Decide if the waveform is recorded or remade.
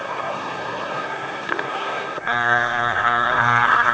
remade